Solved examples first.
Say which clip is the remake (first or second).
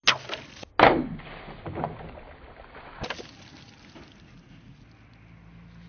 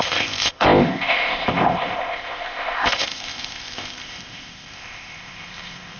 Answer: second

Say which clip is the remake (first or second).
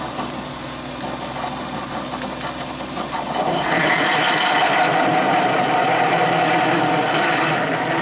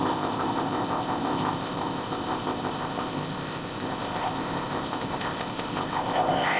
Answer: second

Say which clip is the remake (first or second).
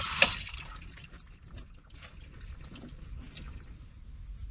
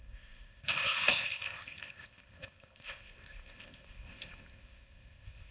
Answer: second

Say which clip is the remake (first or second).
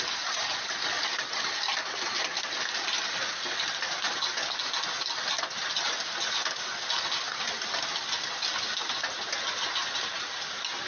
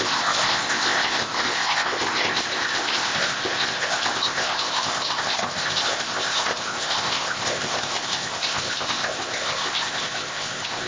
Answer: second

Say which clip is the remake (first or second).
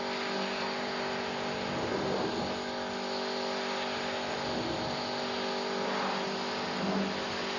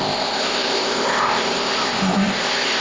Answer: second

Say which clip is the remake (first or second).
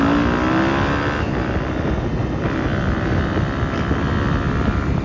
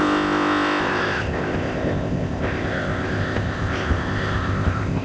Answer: second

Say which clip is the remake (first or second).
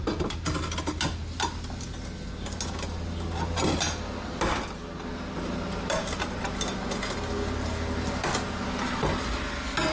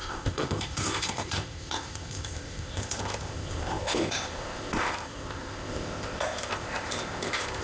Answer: second